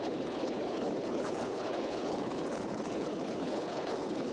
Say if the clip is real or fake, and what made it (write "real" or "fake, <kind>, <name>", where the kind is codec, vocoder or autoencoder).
fake, codec, HILCodec